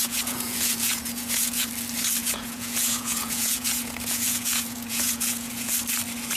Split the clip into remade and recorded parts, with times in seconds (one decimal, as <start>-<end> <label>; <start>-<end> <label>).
0.0-1.7 remade; 1.7-2.2 recorded; 2.2-5.7 remade; 5.7-6.4 recorded